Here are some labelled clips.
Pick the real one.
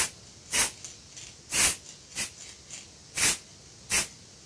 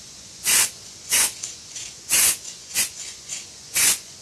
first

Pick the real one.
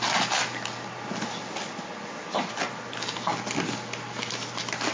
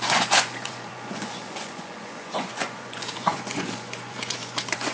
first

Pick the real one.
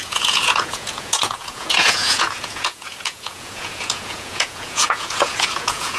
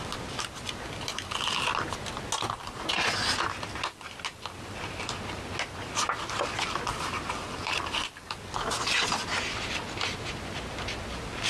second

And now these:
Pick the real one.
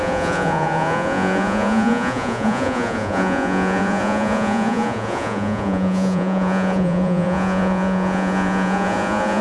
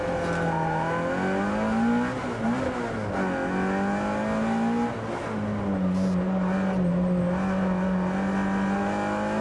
second